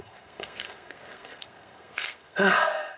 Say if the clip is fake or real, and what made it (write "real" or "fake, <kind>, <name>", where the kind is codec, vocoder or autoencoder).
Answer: fake, codec, SNAC